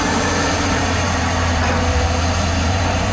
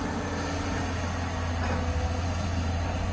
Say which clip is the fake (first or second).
first